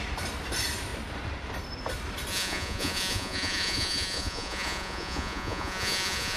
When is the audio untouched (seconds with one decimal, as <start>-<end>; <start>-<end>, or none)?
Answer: 0.0-2.3